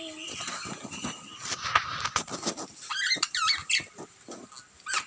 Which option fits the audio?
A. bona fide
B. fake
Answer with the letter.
A